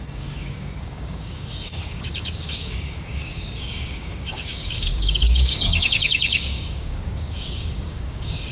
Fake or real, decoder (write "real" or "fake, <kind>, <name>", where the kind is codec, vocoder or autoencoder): fake, codec, DAC